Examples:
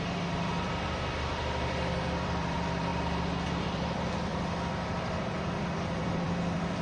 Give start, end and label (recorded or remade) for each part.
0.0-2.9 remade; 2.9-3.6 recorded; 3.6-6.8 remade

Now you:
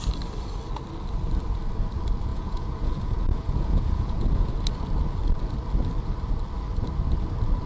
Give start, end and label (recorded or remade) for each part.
0.0-2.3 recorded; 2.3-4.5 remade; 4.5-7.7 recorded